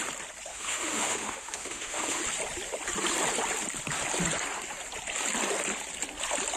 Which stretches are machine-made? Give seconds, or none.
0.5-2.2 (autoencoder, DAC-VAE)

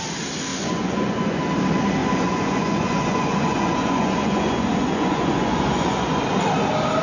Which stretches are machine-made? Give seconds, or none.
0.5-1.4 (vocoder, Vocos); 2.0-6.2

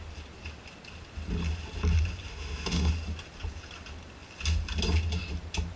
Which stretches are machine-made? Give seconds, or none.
2.3-2.9 (autoencoder, DAC-VAE)

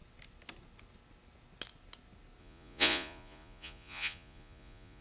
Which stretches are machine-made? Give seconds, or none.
2.4-5.0 (vocoder, Vocos)

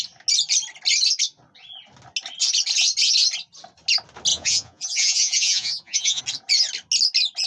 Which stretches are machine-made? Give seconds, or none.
4.3-6.2 (vocoder, Vocos)